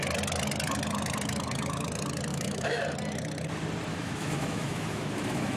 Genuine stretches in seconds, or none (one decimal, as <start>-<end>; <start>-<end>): 0.0-2.3; 2.8-3.9